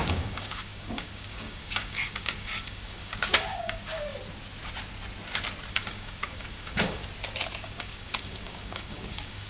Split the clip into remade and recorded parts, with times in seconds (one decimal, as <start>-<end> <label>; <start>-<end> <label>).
0.0-4.1 remade; 4.1-5.7 recorded; 5.7-7.0 remade; 7.0-7.6 recorded; 7.6-9.5 remade